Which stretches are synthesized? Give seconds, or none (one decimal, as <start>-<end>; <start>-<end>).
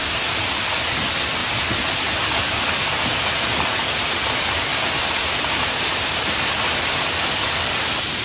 none